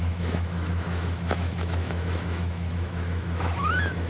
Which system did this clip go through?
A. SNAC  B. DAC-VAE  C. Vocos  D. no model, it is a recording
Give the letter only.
B